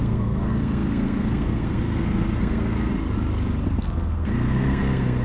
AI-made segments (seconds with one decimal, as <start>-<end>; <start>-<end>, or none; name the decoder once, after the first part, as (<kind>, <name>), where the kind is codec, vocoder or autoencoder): 0.0-2.9 (codec, SNAC); 3.7-5.2